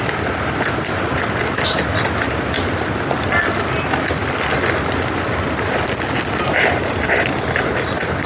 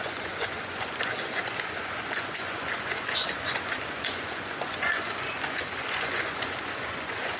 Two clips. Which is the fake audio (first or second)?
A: second